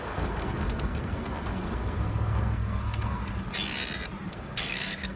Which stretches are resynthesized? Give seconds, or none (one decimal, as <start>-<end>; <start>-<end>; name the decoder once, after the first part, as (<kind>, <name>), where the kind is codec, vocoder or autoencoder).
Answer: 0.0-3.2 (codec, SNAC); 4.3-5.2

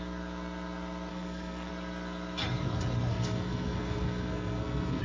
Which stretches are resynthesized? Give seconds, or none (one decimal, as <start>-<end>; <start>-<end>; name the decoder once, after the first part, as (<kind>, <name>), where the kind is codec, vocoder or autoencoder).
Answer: 1.1-1.7 (codec, SNAC); 3.1-5.0

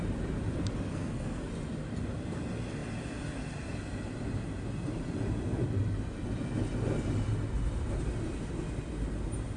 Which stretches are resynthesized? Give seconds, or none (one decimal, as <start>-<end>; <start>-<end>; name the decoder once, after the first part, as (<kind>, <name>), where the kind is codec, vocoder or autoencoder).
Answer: 0.9-1.5 (codec, SNAC)